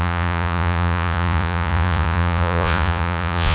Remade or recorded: remade